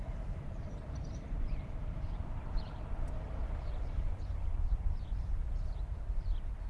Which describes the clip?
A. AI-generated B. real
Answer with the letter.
A